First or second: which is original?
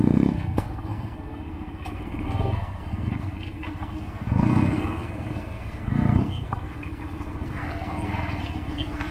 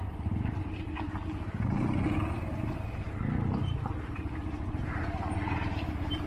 second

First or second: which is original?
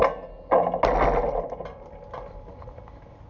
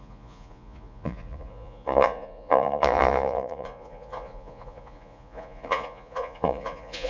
first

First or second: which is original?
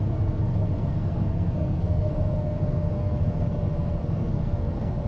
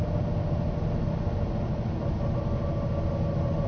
second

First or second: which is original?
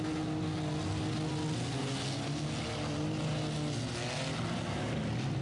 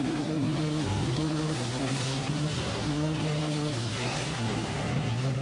first